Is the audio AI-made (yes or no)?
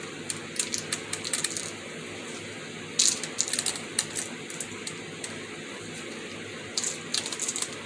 no